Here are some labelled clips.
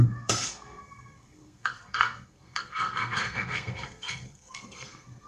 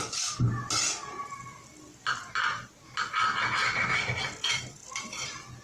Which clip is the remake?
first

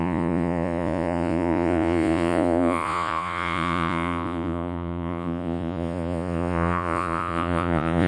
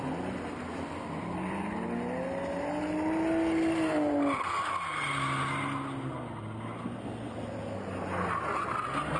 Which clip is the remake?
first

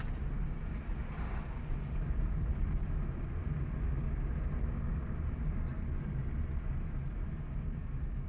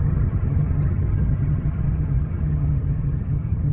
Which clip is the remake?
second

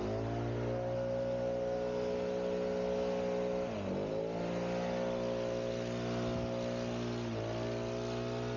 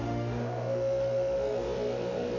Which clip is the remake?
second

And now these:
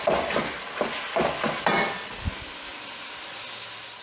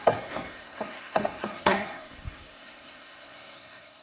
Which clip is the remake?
second